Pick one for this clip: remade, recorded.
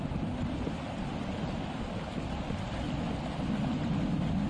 recorded